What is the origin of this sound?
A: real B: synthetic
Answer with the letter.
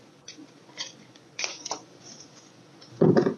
B